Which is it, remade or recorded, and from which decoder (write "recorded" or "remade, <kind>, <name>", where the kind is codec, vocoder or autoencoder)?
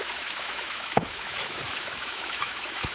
remade, autoencoder, DAC-VAE